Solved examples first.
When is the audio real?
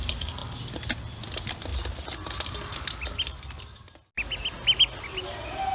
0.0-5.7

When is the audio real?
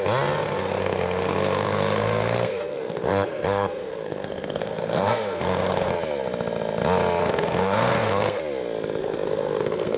0.0-0.6; 5.9-7.2; 8.4-9.0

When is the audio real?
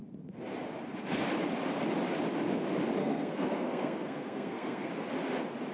0.0-3.0; 4.9-5.7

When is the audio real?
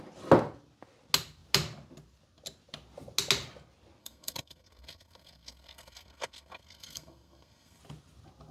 0.0-4.0; 7.8-8.5